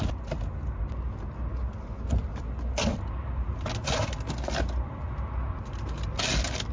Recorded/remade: recorded